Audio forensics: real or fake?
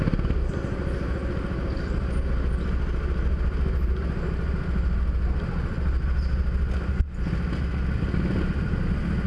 real